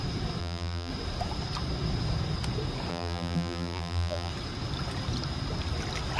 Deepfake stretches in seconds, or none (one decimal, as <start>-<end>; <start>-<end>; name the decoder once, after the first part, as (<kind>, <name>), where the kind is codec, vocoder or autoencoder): 0.4-0.9 (vocoder, BigVGAN v2); 2.9-4.3